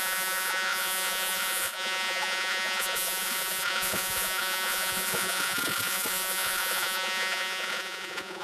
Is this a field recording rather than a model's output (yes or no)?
no